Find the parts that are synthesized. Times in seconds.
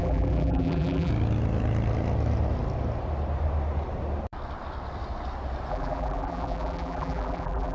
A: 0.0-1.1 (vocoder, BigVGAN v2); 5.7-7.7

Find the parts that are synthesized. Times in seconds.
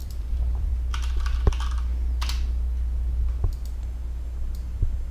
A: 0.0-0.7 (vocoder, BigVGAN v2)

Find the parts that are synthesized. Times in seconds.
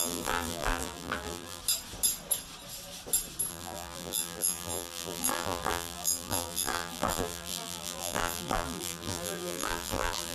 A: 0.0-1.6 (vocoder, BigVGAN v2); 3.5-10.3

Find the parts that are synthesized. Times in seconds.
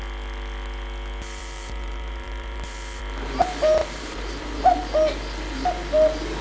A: 1.4-3.0 (vocoder, BigVGAN v2); 3.8-4.6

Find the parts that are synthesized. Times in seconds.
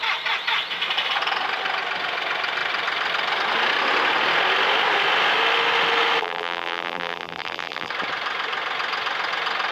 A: 6.2-7.9 (vocoder, BigVGAN v2)